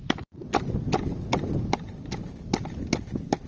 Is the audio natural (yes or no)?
yes